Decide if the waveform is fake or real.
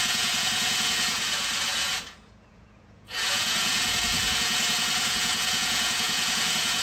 fake